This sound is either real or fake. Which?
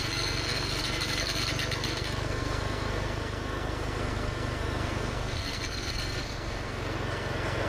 fake